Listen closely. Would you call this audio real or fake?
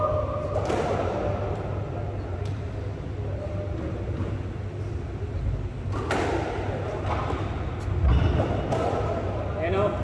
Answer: real